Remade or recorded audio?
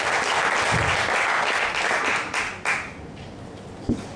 recorded